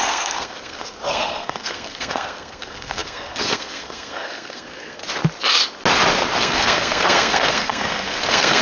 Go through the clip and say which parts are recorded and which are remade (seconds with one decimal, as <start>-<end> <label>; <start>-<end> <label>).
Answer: 0.0-5.0 remade; 5.0-6.4 recorded; 6.4-8.6 remade